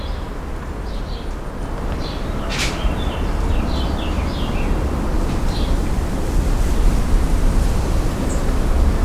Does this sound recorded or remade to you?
recorded